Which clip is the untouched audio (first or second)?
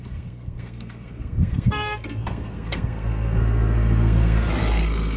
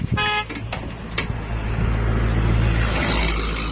second